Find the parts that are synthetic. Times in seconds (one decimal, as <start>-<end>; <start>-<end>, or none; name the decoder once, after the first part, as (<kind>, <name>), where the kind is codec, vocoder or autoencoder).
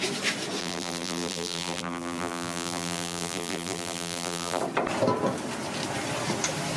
0.6-4.6 (vocoder, BigVGAN v2)